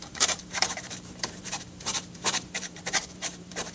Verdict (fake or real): fake